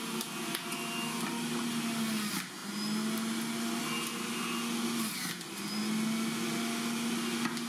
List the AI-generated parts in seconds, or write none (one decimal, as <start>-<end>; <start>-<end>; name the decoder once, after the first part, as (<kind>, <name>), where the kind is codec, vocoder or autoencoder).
none